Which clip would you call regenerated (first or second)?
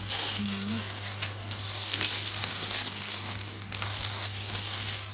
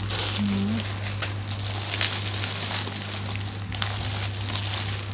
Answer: first